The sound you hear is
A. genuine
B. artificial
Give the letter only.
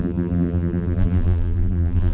B